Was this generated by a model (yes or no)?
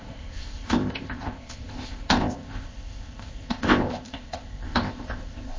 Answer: yes